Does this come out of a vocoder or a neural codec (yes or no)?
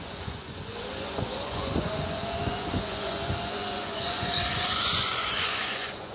yes